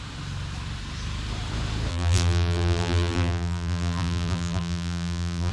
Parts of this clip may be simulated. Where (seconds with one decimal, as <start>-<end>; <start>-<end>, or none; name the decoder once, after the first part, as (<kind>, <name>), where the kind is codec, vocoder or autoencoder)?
1.9-5.5 (vocoder, BigVGAN v2)